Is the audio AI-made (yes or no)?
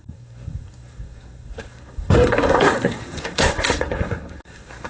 yes